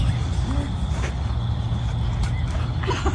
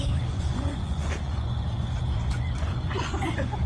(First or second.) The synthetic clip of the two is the second